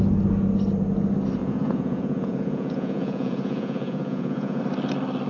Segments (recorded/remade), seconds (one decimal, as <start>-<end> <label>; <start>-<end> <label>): 0.0-1.4 recorded; 1.4-4.6 remade; 4.6-5.3 recorded